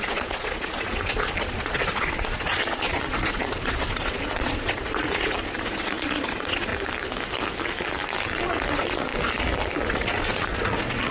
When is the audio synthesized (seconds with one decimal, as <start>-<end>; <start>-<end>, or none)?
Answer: 0.0-6.7; 8.7-9.1; 9.9-11.1